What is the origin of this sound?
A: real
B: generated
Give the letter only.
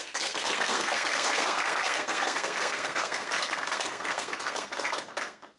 B